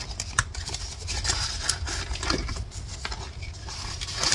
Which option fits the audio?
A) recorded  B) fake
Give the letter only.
A